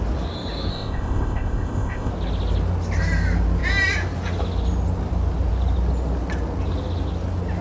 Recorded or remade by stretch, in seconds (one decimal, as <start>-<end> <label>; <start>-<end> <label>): 0.0-0.7 recorded; 0.7-2.1 remade; 2.1-7.6 recorded

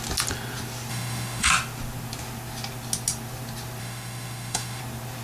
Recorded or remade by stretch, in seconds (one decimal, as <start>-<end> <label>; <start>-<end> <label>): 0.0-0.9 recorded; 0.9-1.5 remade; 1.5-3.8 recorded; 3.8-4.8 remade; 4.8-5.2 recorded

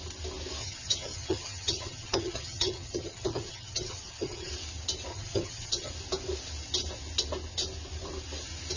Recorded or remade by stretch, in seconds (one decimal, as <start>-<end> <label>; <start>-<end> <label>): 0.0-0.6 recorded; 0.6-4.5 remade; 4.5-5.1 recorded; 5.1-5.9 remade; 5.9-8.8 recorded

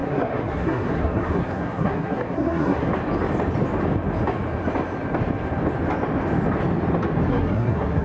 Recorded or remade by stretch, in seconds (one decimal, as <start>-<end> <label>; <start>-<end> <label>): 0.0-2.9 remade; 2.9-7.3 recorded; 7.3-8.0 remade